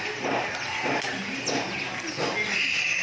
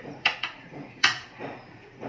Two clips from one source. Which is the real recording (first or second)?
first